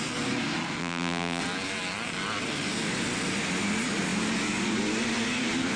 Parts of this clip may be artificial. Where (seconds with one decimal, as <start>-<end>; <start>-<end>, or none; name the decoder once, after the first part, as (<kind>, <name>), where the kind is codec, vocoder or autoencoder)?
0.8-1.4 (vocoder, BigVGAN v2)